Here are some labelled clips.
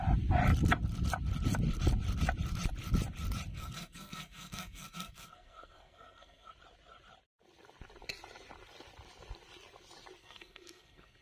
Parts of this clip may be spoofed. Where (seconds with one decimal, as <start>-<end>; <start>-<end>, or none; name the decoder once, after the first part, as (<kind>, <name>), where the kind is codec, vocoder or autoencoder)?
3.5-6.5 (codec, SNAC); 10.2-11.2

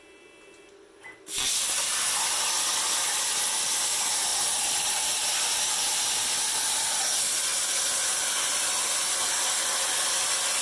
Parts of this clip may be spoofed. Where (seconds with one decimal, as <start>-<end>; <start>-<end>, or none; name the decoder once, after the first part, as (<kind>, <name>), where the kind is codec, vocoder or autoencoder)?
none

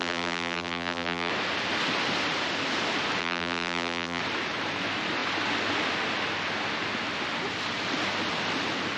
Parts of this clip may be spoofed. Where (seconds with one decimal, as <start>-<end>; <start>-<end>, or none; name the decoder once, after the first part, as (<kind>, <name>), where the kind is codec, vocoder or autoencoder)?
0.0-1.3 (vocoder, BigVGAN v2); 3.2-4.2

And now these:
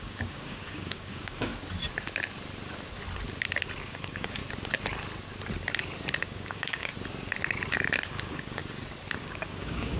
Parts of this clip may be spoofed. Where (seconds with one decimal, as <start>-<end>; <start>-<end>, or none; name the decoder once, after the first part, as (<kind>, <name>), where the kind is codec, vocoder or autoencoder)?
0.0-1.5 (codec, DAC); 3.8-4.4; 6.2-6.9; 8.1-8.6; 9.2-10.0